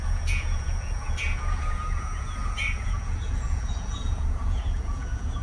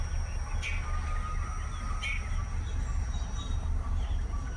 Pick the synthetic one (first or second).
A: first